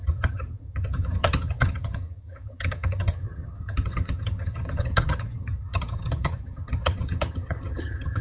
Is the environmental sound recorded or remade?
remade